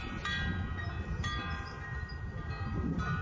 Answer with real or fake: real